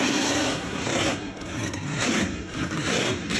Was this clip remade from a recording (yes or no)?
yes